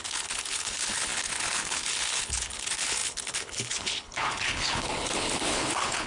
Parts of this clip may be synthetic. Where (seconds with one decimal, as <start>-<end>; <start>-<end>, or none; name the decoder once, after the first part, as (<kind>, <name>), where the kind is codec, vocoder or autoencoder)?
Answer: 0.0-6.1 (codec, HILCodec)